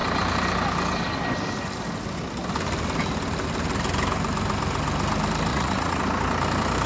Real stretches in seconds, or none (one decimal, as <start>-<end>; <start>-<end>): 0.0-5.5; 6.0-6.9

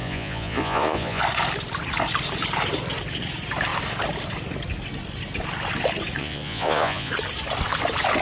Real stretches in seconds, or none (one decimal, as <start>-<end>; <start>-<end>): 1.2-6.2; 7.1-8.2

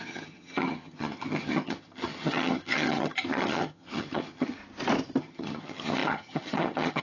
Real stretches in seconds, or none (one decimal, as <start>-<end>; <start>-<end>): 4.6-5.2

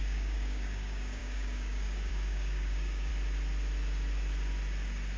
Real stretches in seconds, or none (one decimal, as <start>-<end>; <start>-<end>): 3.1-5.2